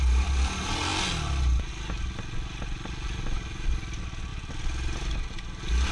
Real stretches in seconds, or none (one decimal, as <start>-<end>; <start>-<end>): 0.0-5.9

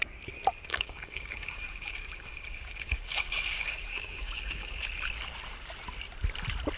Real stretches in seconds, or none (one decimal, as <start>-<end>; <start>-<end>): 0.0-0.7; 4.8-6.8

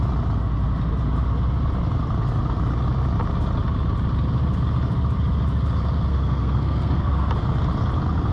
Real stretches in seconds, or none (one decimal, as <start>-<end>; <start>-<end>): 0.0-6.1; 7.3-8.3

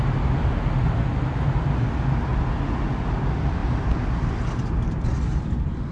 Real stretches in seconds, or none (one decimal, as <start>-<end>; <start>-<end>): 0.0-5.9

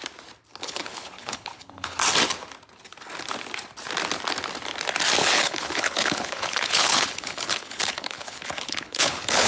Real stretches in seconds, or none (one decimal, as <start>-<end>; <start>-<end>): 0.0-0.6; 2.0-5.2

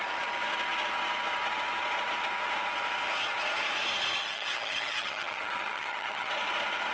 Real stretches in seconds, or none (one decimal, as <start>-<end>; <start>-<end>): 0.0-4.2; 6.3-6.9

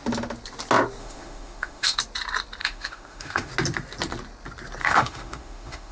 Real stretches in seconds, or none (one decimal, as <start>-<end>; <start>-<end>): 0.0-1.0; 2.0-2.6; 3.5-4.8

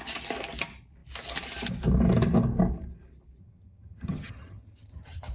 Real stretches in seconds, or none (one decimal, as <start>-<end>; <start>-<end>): 0.0-3.4